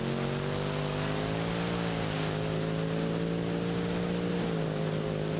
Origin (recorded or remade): recorded